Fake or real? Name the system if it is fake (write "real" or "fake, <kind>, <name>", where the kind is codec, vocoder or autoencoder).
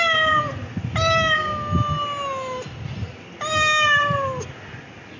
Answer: real